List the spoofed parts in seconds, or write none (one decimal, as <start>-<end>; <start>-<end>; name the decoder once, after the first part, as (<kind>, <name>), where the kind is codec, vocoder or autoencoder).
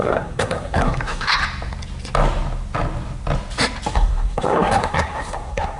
0.0-1.4 (codec, SNAC); 3.9-5.8